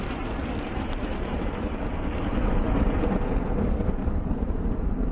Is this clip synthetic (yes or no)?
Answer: yes